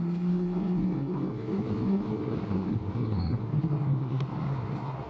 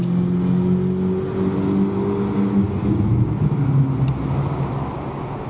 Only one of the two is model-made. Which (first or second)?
first